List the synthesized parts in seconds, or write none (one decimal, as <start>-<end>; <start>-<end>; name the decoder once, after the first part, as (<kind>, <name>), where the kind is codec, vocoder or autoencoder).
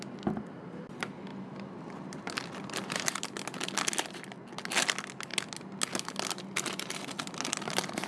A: none